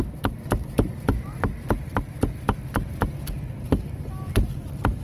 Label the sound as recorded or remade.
recorded